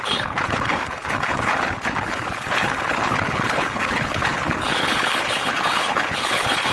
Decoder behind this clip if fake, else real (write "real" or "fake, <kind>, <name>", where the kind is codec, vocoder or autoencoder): fake, codec, HILCodec